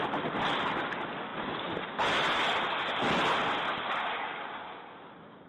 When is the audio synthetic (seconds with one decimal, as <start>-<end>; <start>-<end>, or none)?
none